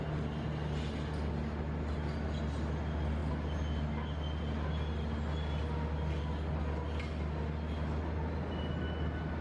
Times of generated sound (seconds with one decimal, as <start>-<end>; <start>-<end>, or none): none